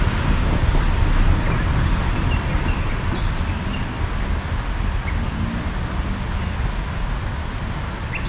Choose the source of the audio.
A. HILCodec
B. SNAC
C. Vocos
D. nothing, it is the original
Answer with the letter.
D